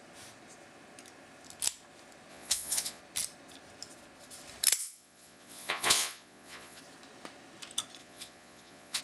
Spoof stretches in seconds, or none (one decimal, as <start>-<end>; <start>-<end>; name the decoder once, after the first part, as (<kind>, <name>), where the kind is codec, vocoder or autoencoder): 2.3-3.0 (vocoder, Vocos); 4.8-6.8; 8.0-9.0